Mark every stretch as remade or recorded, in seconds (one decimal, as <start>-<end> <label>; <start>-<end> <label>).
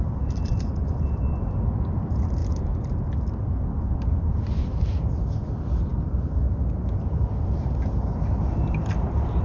0.0-9.4 recorded